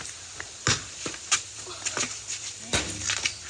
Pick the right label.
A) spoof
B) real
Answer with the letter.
B